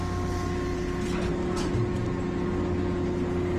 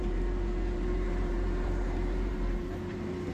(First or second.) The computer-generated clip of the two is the second